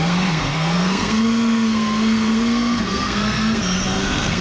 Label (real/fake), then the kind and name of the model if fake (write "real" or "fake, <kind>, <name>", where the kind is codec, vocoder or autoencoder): fake, codec, SNAC